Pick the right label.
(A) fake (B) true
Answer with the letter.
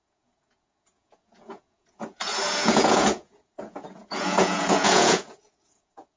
A